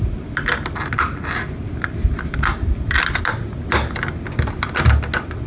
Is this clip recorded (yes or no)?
yes